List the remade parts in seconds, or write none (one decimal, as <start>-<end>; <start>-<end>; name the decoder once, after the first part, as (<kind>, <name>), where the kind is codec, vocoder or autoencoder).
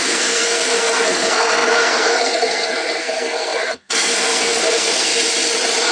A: 0.0-5.1 (codec, SNAC)